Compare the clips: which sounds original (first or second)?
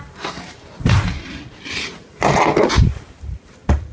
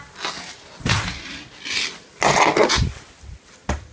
second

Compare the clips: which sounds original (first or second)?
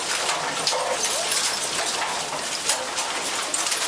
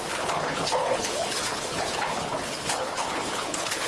first